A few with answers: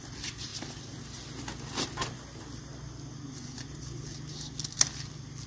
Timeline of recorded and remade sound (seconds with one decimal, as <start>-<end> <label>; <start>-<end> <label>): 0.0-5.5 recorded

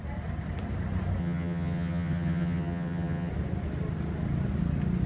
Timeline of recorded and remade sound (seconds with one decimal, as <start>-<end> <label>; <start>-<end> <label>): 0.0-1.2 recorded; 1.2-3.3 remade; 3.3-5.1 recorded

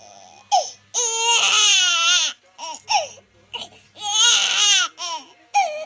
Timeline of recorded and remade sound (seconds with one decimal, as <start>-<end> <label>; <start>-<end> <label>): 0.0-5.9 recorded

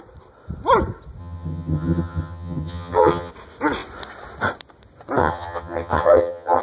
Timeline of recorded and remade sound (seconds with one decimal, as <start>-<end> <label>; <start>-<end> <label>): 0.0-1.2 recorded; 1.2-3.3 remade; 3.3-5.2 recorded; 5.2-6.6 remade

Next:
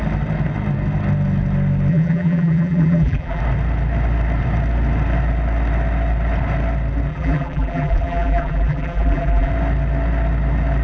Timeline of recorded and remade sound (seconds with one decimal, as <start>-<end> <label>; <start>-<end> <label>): 0.0-1.9 recorded; 1.9-3.4 remade; 3.4-7.1 recorded; 7.1-9.5 remade; 9.5-10.8 recorded